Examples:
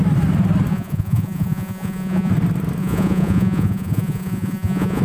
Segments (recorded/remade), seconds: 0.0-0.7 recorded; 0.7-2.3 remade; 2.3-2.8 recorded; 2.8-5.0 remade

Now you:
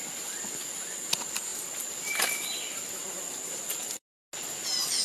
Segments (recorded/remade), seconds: 0.0-5.0 recorded

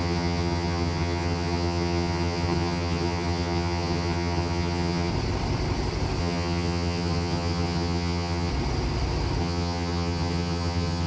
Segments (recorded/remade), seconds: 0.0-5.1 remade; 5.1-6.2 recorded; 6.2-8.5 remade; 8.5-9.4 recorded; 9.4-11.1 remade

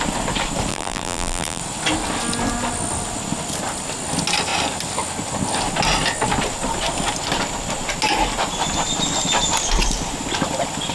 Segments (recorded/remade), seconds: 0.0-0.7 recorded; 0.7-1.6 remade; 1.6-10.9 recorded

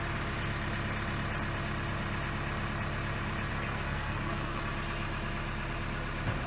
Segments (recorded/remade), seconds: 0.0-3.5 recorded; 3.5-4.6 remade; 4.6-6.5 recorded

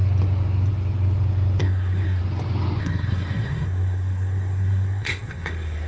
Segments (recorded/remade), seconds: 0.0-1.6 recorded; 1.6-2.2 remade; 2.2-2.8 recorded; 2.8-5.9 remade

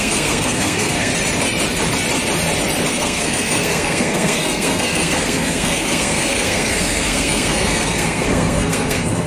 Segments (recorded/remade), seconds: 0.0-1.1 remade; 1.1-2.9 recorded; 2.9-9.3 remade

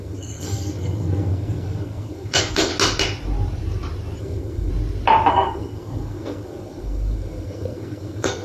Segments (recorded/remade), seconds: 0.0-2.7 remade; 2.7-4.2 recorded; 4.2-4.7 remade; 4.7-5.3 recorded; 5.3-8.4 remade